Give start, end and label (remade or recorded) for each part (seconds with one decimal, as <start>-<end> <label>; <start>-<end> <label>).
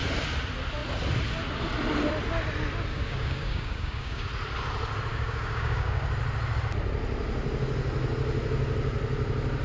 0.0-2.9 recorded; 2.9-4.2 remade; 4.2-5.1 recorded; 5.1-6.0 remade; 6.0-9.6 recorded